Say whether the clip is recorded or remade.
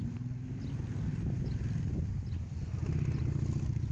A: recorded